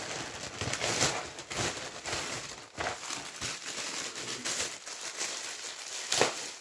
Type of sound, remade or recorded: recorded